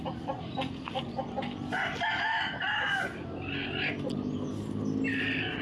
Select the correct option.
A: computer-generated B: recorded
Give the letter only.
B